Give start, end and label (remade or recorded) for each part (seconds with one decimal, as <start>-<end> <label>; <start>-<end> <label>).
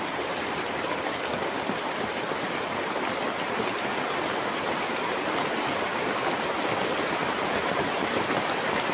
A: 0.0-8.9 recorded